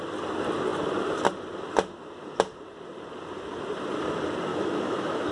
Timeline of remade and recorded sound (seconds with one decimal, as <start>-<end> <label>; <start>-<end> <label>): 0.0-4.5 recorded; 4.5-5.3 remade